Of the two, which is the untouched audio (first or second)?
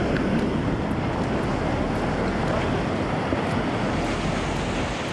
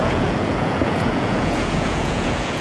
first